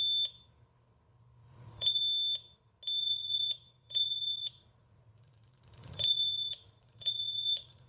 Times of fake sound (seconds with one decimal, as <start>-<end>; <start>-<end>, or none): 1.4-2.0; 3.0-7.9